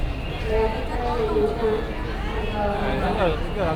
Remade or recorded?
recorded